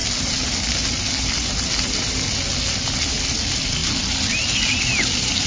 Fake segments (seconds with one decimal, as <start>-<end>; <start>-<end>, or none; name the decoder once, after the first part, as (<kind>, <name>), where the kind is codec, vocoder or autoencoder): none